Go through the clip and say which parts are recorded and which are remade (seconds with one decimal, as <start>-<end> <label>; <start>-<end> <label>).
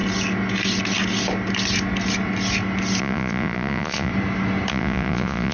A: 0.0-3.0 recorded; 3.0-4.1 remade; 4.1-4.7 recorded; 4.7-5.5 remade